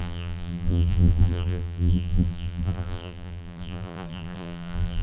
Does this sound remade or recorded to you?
remade